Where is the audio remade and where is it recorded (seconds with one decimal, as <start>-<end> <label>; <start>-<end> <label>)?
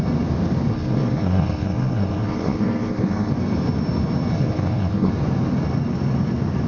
0.0-0.7 recorded; 0.7-3.3 remade; 3.3-4.3 recorded; 4.3-5.1 remade; 5.1-6.7 recorded